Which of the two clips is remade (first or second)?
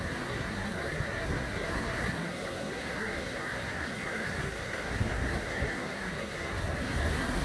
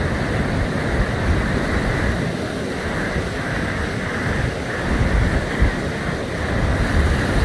first